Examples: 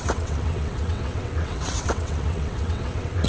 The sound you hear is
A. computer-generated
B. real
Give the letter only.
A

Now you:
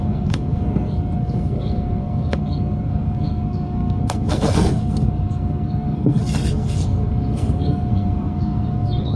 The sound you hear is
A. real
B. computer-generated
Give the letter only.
B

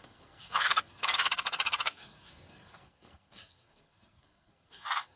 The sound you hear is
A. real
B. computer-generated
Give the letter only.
B